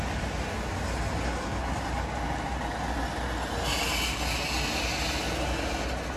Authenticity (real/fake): real